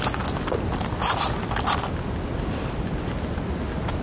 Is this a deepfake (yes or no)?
no